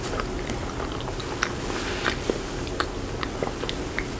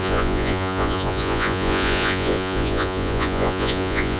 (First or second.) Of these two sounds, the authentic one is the first